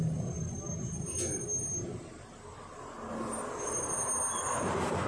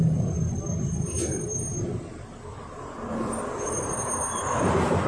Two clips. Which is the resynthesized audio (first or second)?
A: second